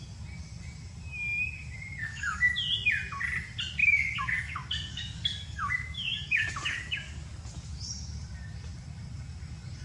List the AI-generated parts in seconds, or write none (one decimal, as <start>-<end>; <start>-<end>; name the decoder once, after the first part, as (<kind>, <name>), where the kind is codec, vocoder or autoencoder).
2.0-2.5 (codec, DAC); 3.8-7.4